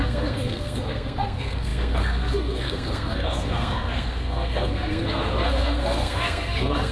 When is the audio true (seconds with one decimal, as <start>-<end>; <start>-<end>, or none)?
none